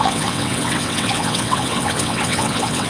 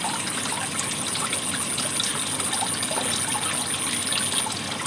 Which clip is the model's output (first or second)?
first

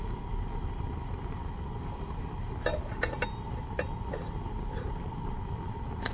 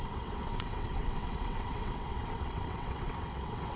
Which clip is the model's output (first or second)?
second